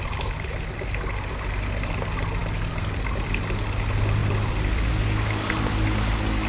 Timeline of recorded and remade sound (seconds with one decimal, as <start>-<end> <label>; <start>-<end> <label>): 0.0-4.2 recorded; 4.2-4.9 remade; 4.9-6.5 recorded